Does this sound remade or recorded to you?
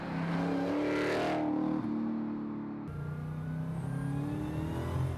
recorded